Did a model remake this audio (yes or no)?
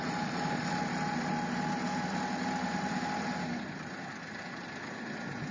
no